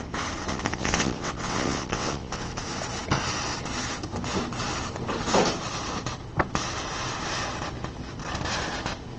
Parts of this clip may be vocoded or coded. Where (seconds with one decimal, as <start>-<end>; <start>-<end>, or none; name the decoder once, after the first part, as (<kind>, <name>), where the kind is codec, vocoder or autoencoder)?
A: 0.5-2.5 (vocoder, WaveNeXt)